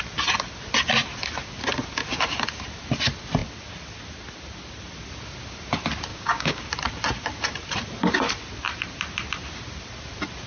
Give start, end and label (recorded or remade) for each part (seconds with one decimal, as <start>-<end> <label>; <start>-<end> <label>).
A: 0.0-6.1 recorded; 6.1-6.6 remade; 6.6-10.5 recorded